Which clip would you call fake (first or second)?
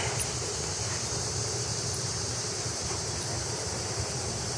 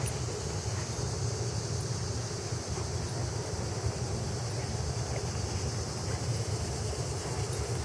first